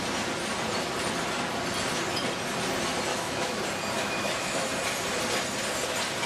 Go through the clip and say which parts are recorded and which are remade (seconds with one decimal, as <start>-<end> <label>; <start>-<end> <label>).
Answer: 0.0-3.1 recorded; 3.1-3.6 remade; 3.6-4.0 recorded; 4.0-4.7 remade; 4.7-6.3 recorded